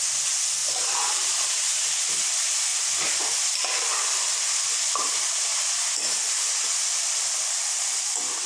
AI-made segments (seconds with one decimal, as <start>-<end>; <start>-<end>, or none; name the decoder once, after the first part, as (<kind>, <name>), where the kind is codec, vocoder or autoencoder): 0.0-5.5 (vocoder, BigVGAN v2); 6.6-8.5